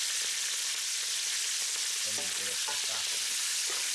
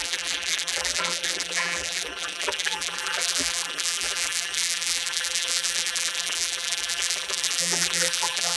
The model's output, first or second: second